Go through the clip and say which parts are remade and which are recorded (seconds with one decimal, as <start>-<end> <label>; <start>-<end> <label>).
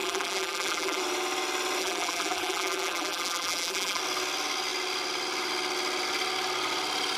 0.0-1.0 remade; 1.0-1.8 recorded; 1.8-4.0 remade; 4.0-7.2 recorded